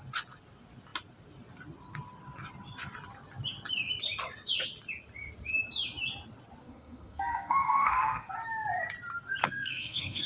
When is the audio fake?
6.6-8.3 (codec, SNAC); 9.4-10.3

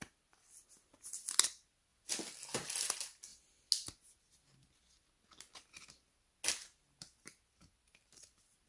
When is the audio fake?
none

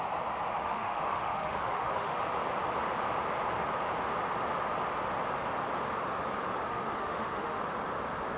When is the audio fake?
0.5-2.2 (autoencoder, DAC-VAE); 6.7-7.6

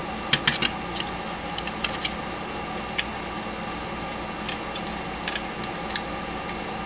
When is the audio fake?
none

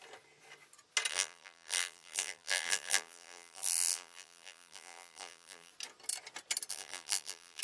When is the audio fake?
1.1-5.7 (vocoder, BigVGAN v2); 6.7-7.6

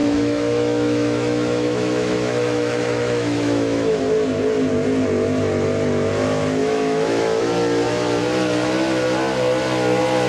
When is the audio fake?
0.0-4.0 (autoencoder, DAC-VAE); 6.6-7.4

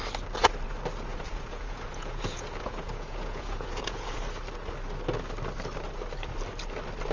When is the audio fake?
1.1-4.2 (vocoder, Vocos)